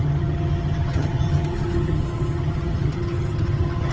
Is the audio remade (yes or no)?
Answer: yes